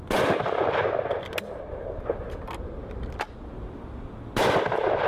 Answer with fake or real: real